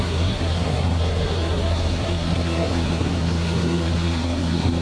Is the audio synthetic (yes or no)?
yes